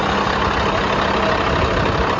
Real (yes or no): yes